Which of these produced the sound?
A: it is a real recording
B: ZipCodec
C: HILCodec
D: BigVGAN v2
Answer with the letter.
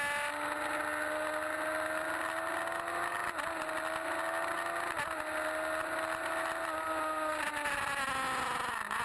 A